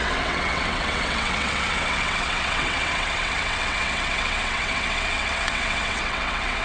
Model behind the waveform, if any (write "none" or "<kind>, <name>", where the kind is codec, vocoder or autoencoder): vocoder, WaveNeXt